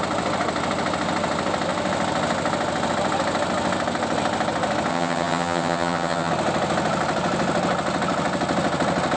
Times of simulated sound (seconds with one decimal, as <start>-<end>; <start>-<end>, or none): 4.9-6.3